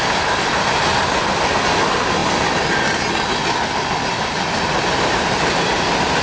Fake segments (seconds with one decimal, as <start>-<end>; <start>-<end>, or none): none